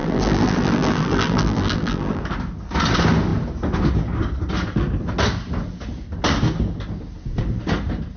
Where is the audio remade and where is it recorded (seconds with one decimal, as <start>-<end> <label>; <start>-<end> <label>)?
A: 0.0-2.2 remade; 2.2-8.2 recorded